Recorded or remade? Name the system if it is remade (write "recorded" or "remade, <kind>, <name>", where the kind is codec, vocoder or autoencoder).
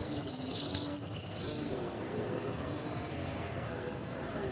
remade, codec, SNAC